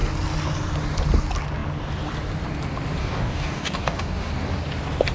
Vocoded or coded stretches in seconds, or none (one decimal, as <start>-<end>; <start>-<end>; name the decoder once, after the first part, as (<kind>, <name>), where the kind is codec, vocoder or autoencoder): 3.0-4.3 (codec, DAC)